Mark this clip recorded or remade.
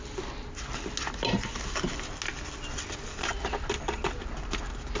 recorded